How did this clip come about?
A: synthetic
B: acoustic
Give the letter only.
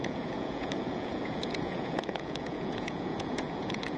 A